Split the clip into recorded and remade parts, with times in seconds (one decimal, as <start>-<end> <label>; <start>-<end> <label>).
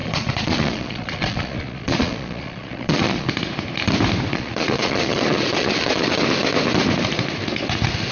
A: 0.0-3.3 remade; 3.3-4.3 recorded; 4.3-6.2 remade; 6.2-8.1 recorded